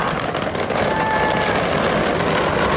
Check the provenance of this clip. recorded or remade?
recorded